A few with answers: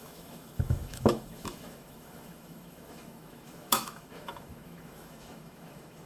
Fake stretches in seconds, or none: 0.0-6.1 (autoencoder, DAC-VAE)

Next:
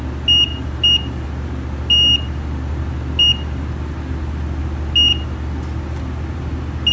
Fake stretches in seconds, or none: none

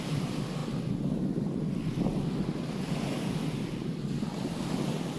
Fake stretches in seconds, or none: none